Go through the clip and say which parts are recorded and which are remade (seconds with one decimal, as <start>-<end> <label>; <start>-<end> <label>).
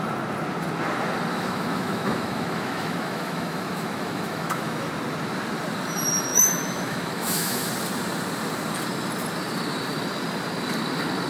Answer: 0.0-1.3 recorded; 1.3-4.9 remade; 4.9-6.3 recorded; 6.3-7.7 remade; 7.7-11.3 recorded